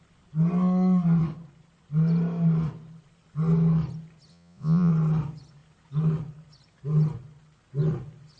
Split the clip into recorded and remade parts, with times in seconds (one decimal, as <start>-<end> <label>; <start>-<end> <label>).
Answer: 0.0-4.3 recorded; 4.3-4.9 remade; 4.9-8.4 recorded

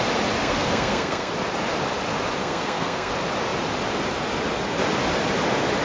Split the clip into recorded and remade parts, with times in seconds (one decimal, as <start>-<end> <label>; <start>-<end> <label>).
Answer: 0.0-0.4 recorded; 0.4-1.3 remade; 1.3-2.4 recorded; 2.4-3.1 remade; 3.1-5.8 recorded

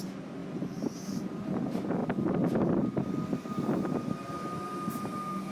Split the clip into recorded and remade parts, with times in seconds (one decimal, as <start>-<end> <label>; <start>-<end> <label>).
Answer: 0.0-0.4 recorded; 0.4-1.5 remade; 1.5-5.5 recorded

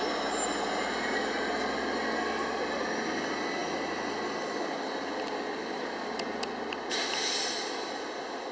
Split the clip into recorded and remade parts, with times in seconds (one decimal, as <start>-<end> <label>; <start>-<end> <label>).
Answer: 0.0-8.5 recorded

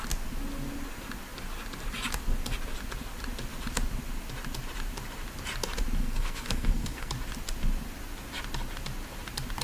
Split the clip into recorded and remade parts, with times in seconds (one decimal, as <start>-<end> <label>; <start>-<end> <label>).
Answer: 0.0-6.0 recorded; 6.0-7.1 remade; 7.1-9.6 recorded

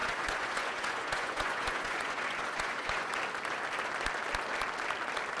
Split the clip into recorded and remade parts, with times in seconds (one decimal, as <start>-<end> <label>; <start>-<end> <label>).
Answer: 0.0-3.1 remade; 3.1-5.4 recorded

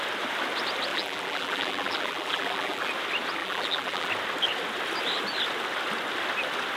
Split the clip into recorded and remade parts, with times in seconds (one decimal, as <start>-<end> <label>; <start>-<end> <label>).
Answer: 0.0-0.9 recorded; 0.9-2.9 remade; 2.9-3.4 recorded; 3.4-4.1 remade; 4.1-6.8 recorded